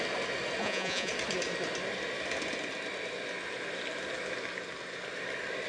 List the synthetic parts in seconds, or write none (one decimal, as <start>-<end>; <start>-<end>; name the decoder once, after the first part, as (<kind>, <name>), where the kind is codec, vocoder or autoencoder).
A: 0.6-1.1 (vocoder, Vocos)